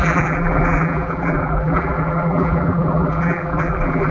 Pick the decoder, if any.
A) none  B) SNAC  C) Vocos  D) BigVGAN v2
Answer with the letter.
D